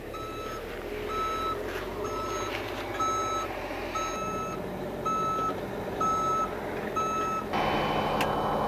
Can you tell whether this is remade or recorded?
recorded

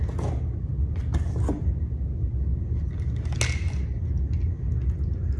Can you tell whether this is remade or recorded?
recorded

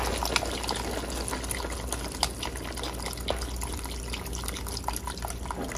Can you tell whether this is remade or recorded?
recorded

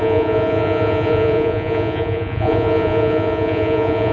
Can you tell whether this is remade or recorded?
remade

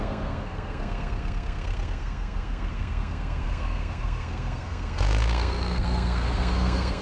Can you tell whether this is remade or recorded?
remade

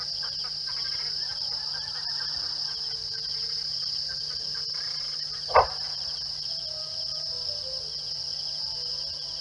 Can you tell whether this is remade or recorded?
recorded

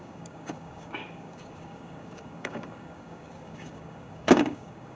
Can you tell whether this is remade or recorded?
remade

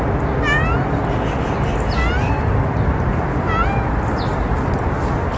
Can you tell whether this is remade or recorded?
recorded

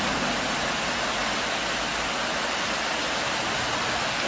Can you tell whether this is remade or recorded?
recorded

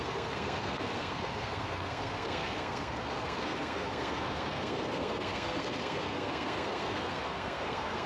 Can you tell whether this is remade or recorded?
remade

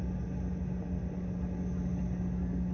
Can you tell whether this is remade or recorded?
recorded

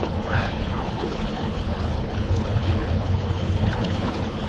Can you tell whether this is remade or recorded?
remade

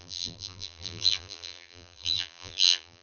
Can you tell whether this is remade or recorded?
remade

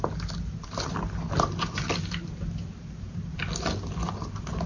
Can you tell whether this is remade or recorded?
recorded